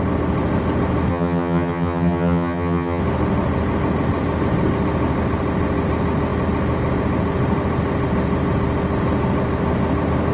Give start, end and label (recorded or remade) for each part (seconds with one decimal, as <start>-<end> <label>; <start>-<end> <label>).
0.0-1.1 recorded; 1.1-3.0 remade; 3.0-10.3 recorded